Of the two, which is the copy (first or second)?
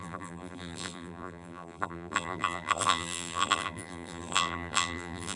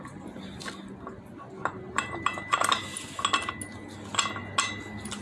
first